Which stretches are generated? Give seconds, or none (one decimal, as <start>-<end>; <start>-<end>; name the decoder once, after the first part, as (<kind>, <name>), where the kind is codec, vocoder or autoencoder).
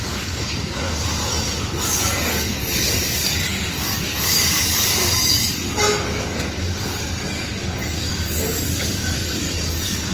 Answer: 0.0-1.3 (codec, DAC); 1.8-10.1